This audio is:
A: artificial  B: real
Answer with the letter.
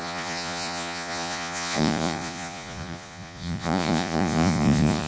A